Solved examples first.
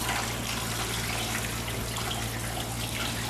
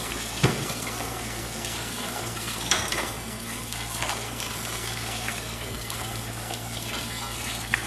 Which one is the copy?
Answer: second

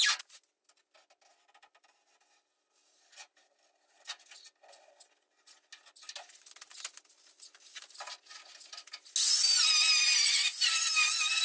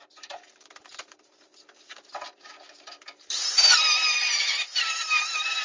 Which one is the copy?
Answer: second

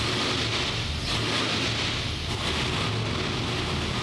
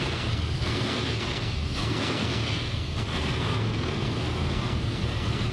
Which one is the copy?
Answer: second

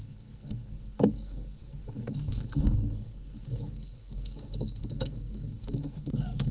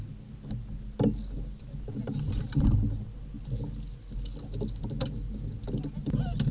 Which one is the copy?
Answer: first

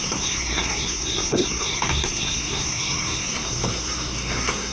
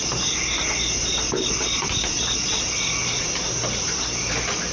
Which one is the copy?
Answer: first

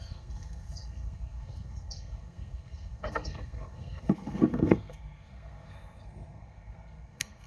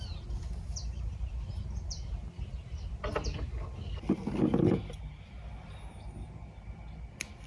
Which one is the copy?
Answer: first